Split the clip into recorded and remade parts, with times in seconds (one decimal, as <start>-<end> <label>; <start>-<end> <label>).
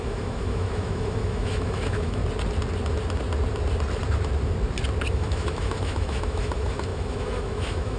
0.0-2.2 remade; 2.2-5.1 recorded; 5.1-8.0 remade